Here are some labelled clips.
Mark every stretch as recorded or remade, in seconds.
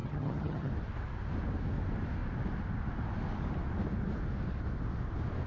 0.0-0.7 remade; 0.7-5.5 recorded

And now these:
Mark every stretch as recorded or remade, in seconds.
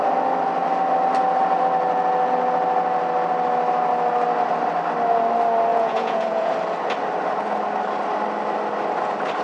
0.0-5.7 recorded; 5.7-6.5 remade; 6.5-9.4 recorded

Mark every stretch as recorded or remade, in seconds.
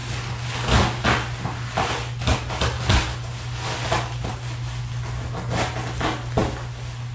0.0-7.1 recorded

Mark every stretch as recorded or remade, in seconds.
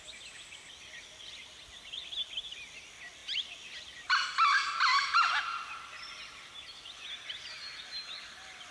0.0-8.7 recorded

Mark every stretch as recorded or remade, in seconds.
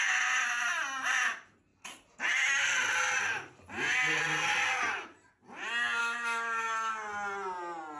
0.0-6.0 recorded; 6.0-6.9 remade; 6.9-8.0 recorded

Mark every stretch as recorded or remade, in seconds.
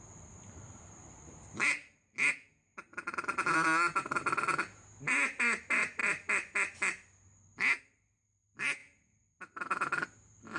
0.0-10.6 recorded